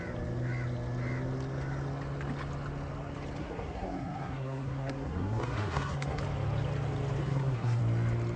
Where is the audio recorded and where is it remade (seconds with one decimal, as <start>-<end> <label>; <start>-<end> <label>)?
0.0-3.4 recorded; 3.4-6.2 remade; 6.2-7.2 recorded; 7.2-7.8 remade; 7.8-8.4 recorded